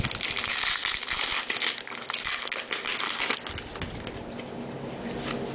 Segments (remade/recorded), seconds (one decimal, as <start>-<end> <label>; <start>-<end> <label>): 0.0-5.5 recorded